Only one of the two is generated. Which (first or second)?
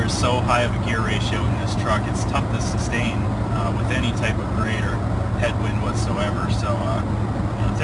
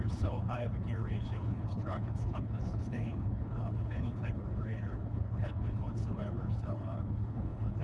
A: second